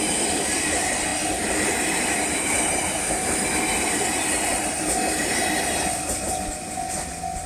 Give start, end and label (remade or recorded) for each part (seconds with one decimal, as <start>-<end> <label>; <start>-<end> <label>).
0.0-7.5 recorded